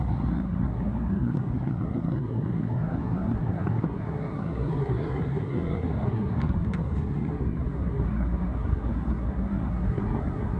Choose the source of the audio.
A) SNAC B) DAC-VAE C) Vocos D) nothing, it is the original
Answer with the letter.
A